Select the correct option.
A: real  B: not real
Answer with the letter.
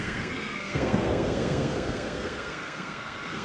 B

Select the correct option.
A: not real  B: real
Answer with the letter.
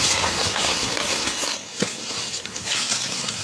A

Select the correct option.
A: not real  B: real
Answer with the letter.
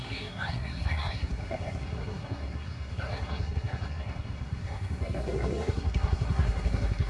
A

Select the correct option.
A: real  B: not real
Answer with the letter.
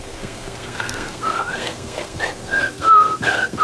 B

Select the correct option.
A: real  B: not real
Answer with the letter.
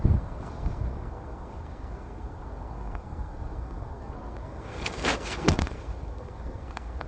B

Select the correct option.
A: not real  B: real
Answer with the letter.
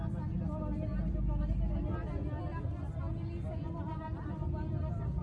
B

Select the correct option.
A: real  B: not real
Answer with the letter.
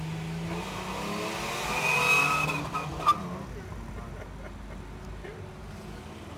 A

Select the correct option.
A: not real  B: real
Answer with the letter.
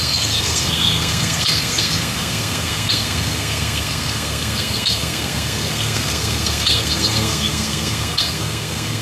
A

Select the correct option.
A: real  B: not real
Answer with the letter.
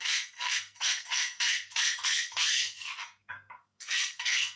B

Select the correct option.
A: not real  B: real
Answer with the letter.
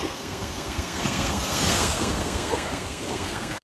A